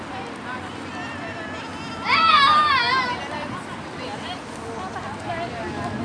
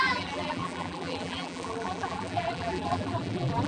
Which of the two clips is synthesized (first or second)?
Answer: second